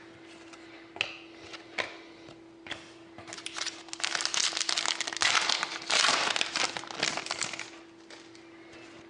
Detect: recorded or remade recorded